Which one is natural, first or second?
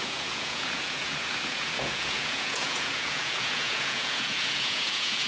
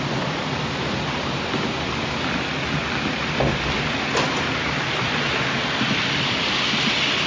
second